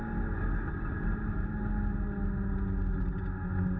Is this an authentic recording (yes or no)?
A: yes